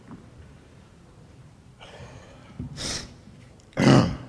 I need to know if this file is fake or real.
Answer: fake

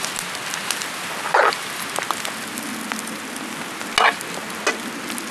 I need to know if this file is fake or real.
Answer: real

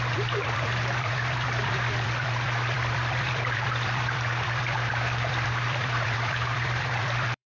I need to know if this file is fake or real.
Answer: fake